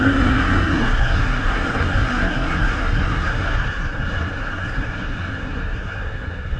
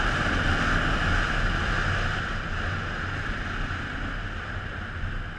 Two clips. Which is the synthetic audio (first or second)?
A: first